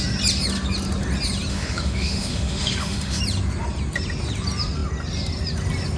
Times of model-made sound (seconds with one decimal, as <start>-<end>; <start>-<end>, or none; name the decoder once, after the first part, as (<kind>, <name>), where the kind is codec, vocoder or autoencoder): 1.5-3.2 (autoencoder, DAC-VAE)